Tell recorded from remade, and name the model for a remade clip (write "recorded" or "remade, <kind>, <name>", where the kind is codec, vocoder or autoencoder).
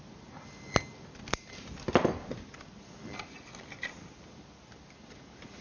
recorded